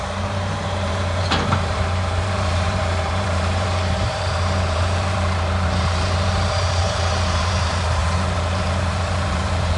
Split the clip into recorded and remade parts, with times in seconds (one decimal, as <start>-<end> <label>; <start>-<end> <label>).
0.0-9.8 remade